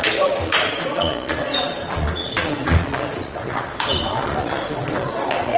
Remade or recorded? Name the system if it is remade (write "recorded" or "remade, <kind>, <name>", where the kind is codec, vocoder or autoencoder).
remade, vocoder, Vocos